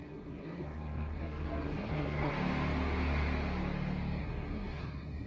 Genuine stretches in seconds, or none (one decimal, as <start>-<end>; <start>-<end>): 2.3-4.2